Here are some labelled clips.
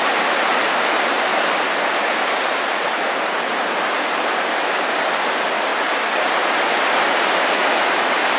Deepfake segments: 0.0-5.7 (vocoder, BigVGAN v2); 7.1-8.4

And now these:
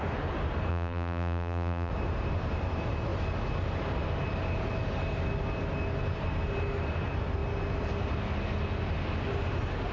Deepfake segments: 0.7-1.9 (vocoder, BigVGAN v2)